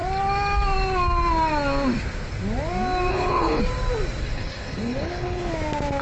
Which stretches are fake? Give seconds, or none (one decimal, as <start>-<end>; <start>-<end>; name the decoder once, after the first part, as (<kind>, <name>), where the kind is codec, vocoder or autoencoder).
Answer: 3.1-3.6 (codec, HILCodec); 4.2-5.5